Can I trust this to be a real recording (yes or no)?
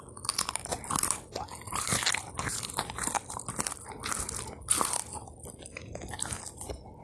yes